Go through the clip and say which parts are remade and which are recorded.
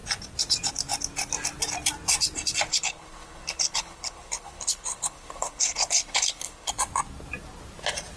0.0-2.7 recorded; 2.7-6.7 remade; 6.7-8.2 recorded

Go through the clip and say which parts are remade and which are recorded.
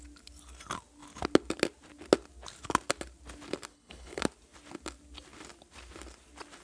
0.0-3.7 recorded; 3.7-4.2 remade; 4.2-6.6 recorded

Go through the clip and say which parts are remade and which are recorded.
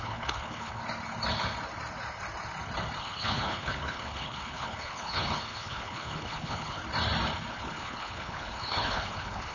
0.0-0.8 remade; 0.8-3.0 recorded; 3.0-6.8 remade; 6.8-7.5 recorded; 7.5-9.5 remade